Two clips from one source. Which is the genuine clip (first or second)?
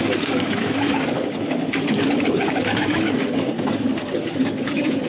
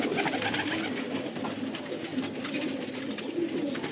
second